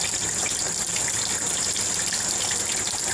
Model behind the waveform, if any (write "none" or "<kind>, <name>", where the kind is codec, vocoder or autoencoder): none